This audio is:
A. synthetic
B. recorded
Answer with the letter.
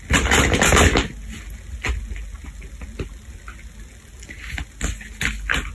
B